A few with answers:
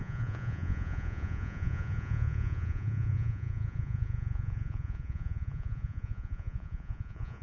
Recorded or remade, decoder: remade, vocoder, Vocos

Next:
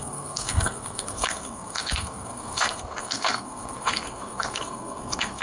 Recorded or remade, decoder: remade, codec, SNAC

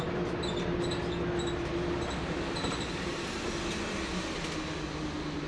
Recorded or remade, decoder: recorded